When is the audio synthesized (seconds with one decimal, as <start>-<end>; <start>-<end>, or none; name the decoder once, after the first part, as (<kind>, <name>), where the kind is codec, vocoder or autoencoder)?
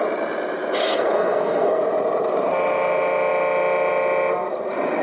0.8-1.8 (codec, SNAC)